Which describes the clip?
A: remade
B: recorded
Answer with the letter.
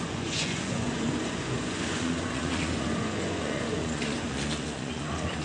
A